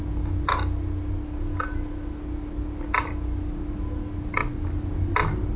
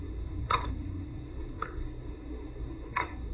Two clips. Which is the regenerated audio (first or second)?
second